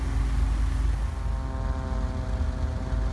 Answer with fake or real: real